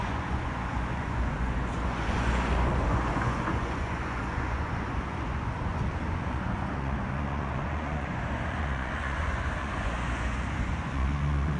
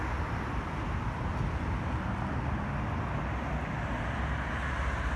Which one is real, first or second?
second